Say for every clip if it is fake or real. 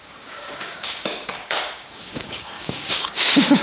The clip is fake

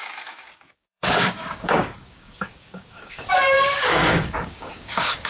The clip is fake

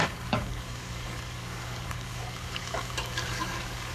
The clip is fake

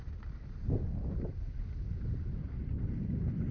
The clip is real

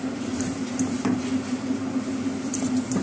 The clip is real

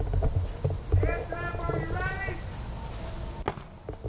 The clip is real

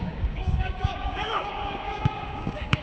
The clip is fake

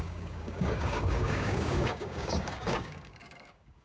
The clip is fake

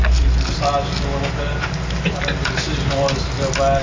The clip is real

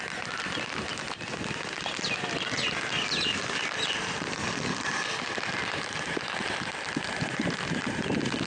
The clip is real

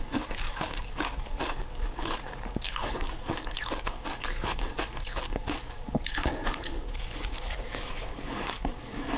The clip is fake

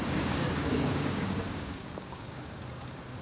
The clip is fake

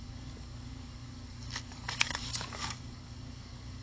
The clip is fake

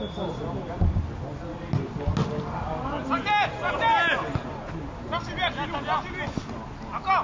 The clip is real